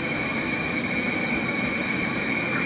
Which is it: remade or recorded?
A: remade